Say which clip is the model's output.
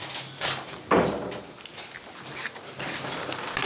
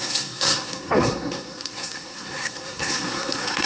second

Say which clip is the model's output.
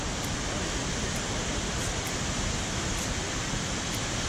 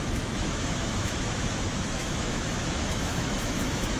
second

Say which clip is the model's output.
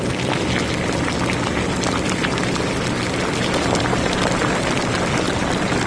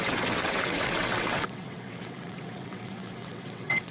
second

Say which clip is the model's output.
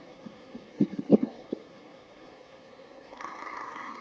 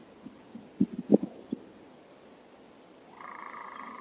first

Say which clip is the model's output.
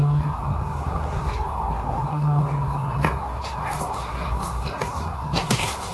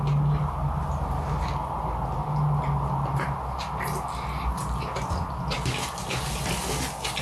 first